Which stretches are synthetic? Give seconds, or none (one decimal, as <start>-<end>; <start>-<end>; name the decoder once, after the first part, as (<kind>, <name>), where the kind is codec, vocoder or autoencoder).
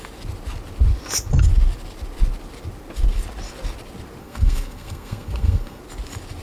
4.2-5.8 (codec, SNAC)